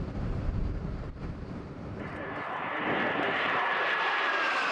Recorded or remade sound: remade